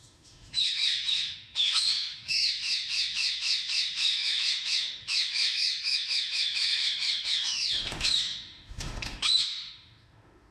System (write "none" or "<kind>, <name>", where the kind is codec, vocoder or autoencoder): autoencoder, DAC-VAE